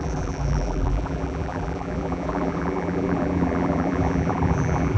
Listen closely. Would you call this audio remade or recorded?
remade